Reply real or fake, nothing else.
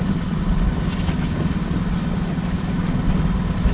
real